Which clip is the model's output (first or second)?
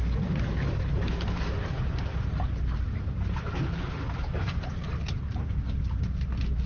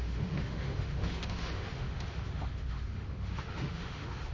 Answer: second